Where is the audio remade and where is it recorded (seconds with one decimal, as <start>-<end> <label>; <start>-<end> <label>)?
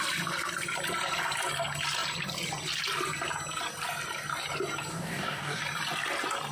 0.0-4.9 recorded; 4.9-5.6 remade; 5.6-6.5 recorded